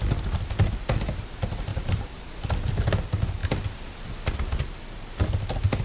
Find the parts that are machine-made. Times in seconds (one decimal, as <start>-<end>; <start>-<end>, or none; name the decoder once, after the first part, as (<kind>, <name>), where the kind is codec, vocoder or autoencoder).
1.7-2.3 (vocoder, BigVGAN v2)